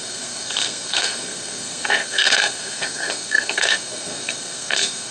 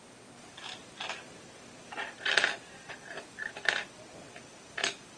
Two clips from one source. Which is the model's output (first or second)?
first